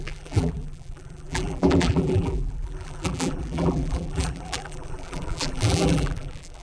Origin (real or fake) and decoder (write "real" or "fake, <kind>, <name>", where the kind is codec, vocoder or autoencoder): fake, vocoder, BigVGAN v2